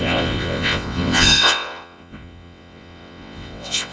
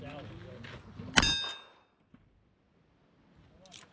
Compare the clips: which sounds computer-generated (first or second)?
first